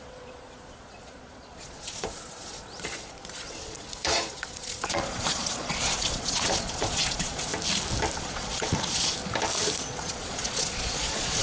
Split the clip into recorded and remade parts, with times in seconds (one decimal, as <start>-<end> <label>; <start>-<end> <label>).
0.0-7.5 remade; 7.5-8.2 recorded; 8.2-9.1 remade; 9.1-9.8 recorded; 9.8-11.4 remade